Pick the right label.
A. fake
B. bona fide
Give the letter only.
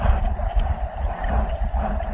B